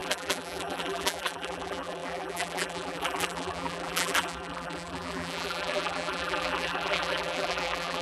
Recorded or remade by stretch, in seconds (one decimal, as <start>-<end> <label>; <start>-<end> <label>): 0.0-8.0 remade